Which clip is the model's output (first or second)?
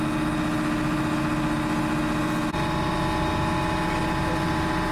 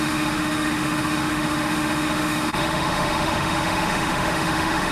second